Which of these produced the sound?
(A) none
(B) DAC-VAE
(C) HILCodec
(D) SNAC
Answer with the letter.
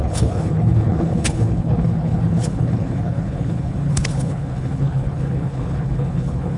C